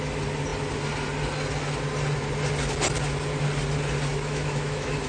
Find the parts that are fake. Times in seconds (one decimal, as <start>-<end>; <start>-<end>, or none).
4.1-5.1